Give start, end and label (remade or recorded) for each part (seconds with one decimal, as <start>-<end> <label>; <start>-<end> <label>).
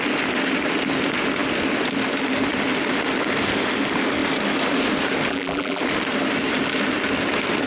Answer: 0.0-5.3 recorded; 5.3-5.8 remade; 5.8-7.7 recorded